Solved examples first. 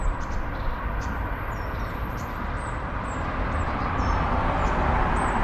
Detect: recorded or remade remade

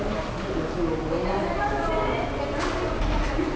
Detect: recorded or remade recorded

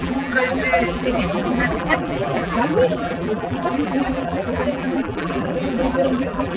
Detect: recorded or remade remade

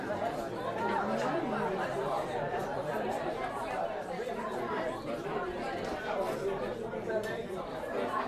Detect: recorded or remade remade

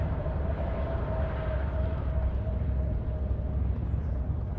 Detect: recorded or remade remade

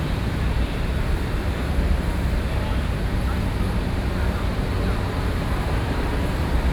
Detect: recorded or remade remade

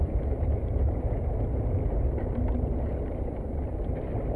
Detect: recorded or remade recorded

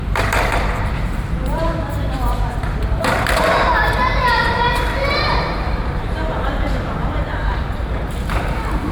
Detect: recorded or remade remade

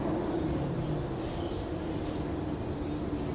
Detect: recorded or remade recorded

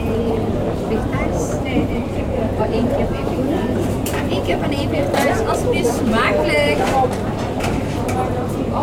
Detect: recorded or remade remade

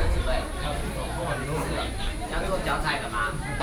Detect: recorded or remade recorded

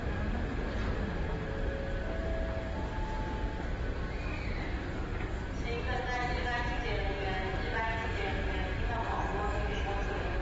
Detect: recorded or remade recorded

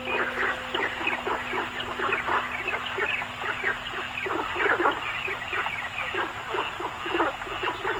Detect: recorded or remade recorded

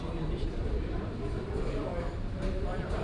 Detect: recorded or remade remade